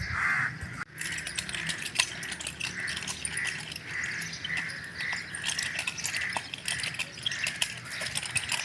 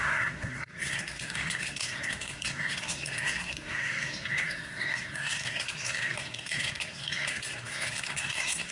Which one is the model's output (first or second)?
second